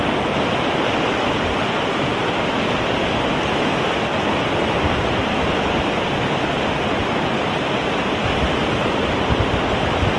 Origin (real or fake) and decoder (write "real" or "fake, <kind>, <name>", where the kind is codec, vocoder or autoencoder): real